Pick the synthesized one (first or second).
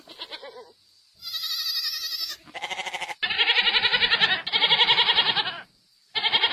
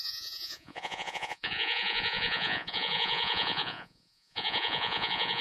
second